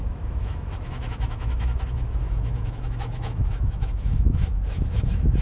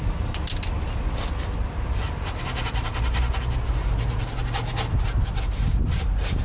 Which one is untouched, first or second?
second